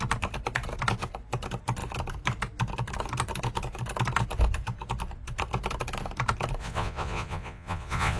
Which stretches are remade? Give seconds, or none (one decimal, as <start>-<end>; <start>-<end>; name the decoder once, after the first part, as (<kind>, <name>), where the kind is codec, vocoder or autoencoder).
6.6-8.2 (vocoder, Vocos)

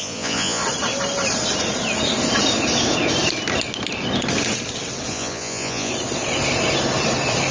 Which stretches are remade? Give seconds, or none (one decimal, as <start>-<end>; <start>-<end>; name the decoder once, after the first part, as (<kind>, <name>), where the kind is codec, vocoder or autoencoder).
0.0-0.6 (vocoder, Vocos); 5.1-5.9

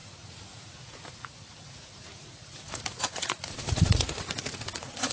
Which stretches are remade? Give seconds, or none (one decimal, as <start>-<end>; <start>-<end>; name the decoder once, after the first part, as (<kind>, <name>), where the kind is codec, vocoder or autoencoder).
0.0-5.1 (vocoder, Vocos)

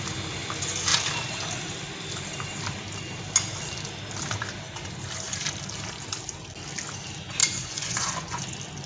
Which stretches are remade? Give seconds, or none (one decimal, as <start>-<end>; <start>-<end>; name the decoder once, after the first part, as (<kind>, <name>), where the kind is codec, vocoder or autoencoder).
7.4-8.4 (vocoder, Vocos)

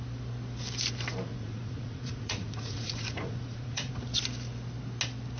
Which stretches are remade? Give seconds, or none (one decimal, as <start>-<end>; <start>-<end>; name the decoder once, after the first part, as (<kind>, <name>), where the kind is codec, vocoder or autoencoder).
1.3-3.9 (vocoder, Vocos)